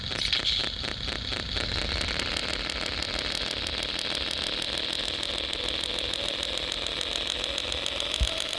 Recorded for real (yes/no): yes